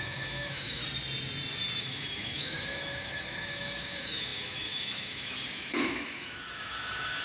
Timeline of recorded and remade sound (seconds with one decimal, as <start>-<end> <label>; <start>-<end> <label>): 0.0-0.8 remade; 0.8-1.8 recorded; 1.8-7.2 remade